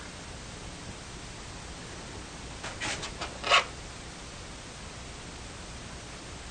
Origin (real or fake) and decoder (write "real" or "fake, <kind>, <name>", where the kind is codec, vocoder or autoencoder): real